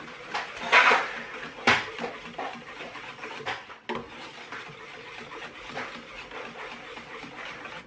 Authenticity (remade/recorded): recorded